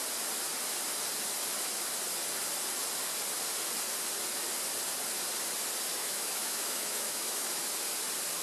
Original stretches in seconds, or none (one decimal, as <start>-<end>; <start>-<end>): 0.0-6.0; 7.6-8.4